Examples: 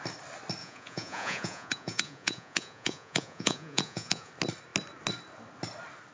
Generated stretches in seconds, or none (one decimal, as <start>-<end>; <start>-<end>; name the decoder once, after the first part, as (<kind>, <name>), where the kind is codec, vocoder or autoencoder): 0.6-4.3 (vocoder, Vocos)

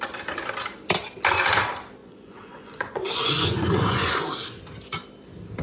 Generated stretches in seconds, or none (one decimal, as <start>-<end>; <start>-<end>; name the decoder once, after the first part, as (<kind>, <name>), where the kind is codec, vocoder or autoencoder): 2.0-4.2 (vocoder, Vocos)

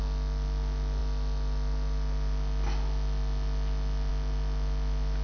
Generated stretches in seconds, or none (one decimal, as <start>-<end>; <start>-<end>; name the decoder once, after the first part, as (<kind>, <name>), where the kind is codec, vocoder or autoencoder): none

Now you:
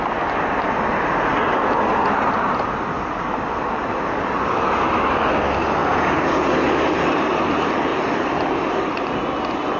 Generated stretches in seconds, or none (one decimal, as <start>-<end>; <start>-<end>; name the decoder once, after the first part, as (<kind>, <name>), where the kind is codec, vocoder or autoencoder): 5.8-6.5 (vocoder, Vocos)

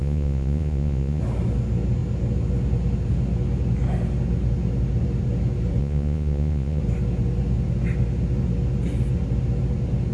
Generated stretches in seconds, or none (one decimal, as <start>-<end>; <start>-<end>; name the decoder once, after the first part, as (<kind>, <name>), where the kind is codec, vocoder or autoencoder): 0.0-1.2 (vocoder, Vocos); 5.8-6.8

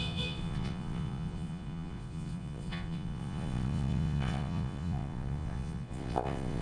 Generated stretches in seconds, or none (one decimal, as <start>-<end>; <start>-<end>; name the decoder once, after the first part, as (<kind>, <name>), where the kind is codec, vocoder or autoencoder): 0.0-6.6 (vocoder, Vocos)

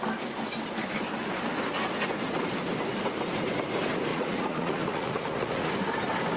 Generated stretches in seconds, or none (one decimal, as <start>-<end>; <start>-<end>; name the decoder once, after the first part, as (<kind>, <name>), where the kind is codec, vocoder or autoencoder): 4.1-5.7 (vocoder, Vocos)